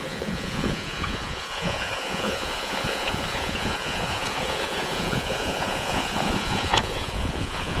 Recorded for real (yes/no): no